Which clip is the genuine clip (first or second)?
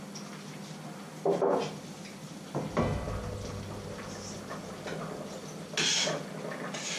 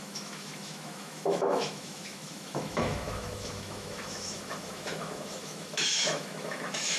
first